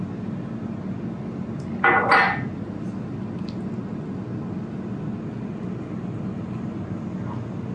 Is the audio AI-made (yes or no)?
no